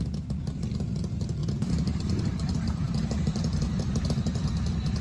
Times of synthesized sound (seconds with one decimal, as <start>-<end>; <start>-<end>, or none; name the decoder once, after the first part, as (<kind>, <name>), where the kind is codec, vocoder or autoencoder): 1.4-4.0 (vocoder, BigVGAN v2)